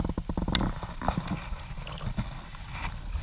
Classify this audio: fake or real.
real